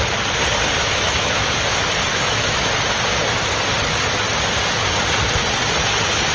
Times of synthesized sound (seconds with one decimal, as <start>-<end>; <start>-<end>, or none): 0.8-1.5; 2.1-2.7